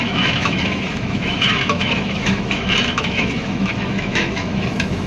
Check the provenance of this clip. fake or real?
fake